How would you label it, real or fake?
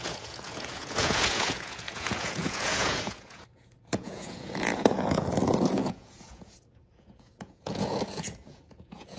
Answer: fake